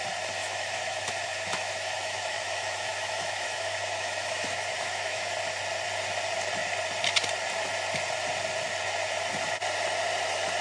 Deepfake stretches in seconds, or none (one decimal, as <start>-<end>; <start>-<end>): 0.4-5.3